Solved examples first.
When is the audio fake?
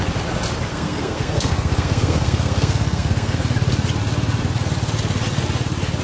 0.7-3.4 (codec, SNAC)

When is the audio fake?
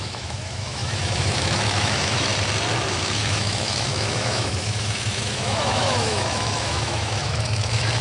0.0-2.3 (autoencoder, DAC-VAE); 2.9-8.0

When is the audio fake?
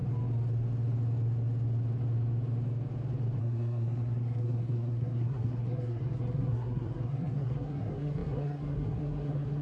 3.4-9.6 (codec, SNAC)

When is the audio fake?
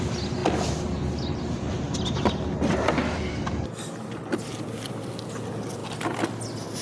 none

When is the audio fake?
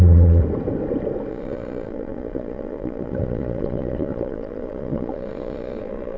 0.0-0.4 (vocoder, Vocos); 1.3-6.2